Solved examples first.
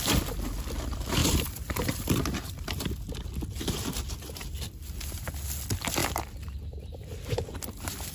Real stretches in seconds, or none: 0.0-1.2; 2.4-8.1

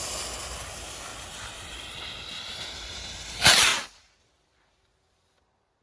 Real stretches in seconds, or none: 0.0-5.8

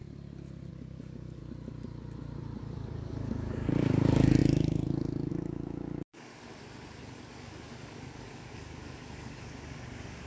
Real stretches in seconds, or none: 0.0-0.7; 1.4-2.6; 6.3-7.0

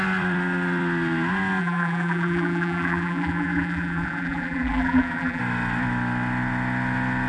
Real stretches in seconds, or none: 0.0-1.6; 5.4-7.3

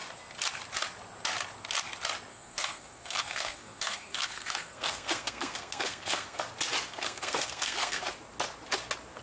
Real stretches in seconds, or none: 0.0-2.3; 6.4-6.9; 8.0-9.2

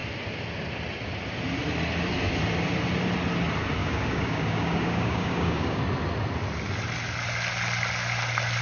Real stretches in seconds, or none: 0.0-3.8; 5.8-8.6

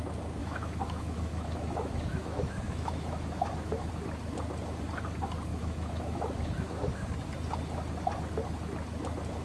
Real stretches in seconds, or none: 0.0-0.4; 3.9-5.5; 7.1-9.4

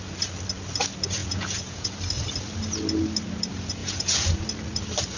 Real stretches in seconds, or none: 0.0-1.2; 1.9-3.8; 4.4-5.2